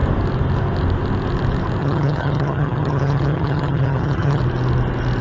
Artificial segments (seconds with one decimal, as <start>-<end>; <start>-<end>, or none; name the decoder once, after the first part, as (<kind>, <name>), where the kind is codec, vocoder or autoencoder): 1.8-4.4 (vocoder, HiFi-GAN)